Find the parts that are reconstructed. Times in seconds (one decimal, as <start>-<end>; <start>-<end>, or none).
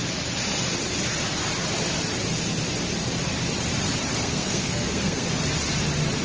4.2-5.3